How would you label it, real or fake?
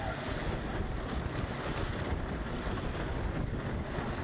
real